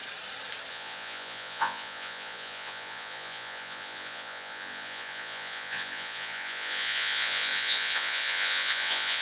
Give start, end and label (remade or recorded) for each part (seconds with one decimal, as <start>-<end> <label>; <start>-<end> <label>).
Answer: 0.0-0.7 recorded; 0.7-9.2 remade